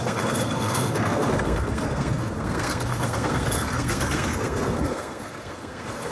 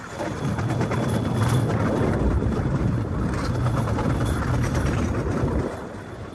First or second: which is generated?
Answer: first